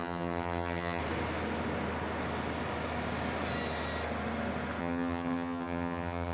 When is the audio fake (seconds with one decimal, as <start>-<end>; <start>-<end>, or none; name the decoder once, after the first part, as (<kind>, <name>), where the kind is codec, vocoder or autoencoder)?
0.0-1.0 (vocoder, HiFi-GAN); 4.8-6.3